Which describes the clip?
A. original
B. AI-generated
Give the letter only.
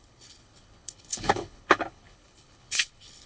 B